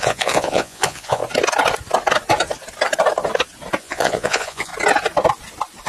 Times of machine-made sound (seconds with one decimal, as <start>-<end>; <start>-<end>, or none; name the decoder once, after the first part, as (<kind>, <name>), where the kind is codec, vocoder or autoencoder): 0.0-1.2 (vocoder, Vocos); 3.8-4.7